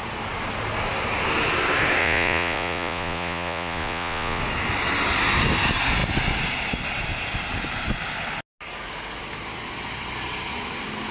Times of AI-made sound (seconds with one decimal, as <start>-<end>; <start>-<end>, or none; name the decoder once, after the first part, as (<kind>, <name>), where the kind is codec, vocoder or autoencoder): 2.0-4.4 (vocoder, Vocos)